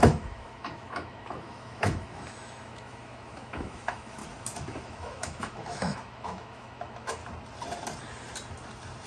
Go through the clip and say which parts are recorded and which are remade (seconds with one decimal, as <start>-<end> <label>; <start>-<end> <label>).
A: 0.0-4.2 remade; 4.2-4.8 recorded; 4.8-7.2 remade; 7.2-9.1 recorded